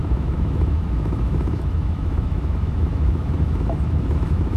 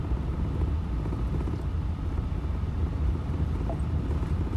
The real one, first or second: second